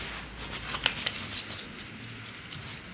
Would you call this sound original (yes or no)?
yes